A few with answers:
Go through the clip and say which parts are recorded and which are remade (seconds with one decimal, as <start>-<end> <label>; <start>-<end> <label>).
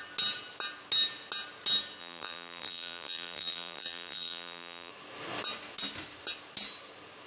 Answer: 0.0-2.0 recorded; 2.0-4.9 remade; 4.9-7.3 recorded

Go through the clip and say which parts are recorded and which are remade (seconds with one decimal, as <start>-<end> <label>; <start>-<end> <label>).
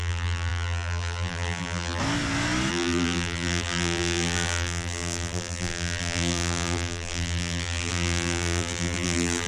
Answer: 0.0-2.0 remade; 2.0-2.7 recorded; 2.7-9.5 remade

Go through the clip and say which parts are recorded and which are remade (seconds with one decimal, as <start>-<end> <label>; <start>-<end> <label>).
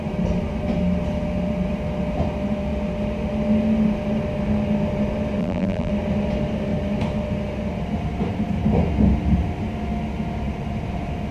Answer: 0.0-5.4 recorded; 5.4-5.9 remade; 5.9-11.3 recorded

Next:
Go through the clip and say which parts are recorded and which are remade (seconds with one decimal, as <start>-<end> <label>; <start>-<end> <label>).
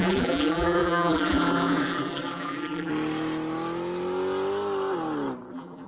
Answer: 0.0-2.9 remade; 2.9-5.5 recorded; 5.5-5.9 remade